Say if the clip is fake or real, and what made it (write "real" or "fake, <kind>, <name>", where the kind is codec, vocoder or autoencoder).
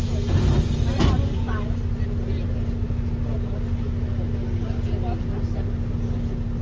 real